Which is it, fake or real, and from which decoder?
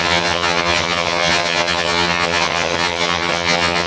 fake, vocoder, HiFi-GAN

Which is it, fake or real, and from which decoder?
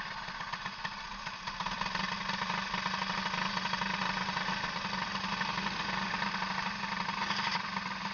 real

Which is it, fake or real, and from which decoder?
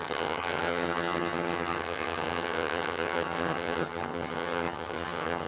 fake, vocoder, HiFi-GAN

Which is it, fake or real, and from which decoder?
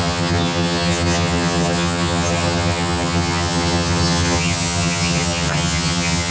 fake, vocoder, HiFi-GAN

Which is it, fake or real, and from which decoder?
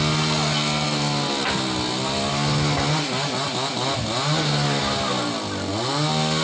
real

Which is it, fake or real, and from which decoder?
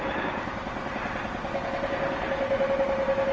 real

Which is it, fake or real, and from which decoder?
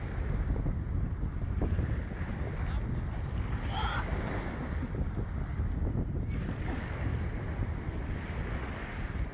real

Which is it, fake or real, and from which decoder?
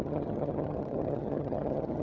fake, vocoder, HiFi-GAN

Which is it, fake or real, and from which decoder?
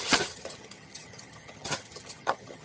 fake, vocoder, HiFi-GAN